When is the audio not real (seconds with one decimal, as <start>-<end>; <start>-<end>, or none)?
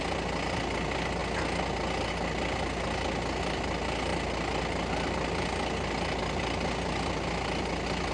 none